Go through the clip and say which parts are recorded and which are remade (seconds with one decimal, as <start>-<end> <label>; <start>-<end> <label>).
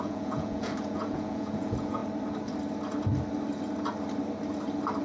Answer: 0.0-2.0 remade; 2.0-5.0 recorded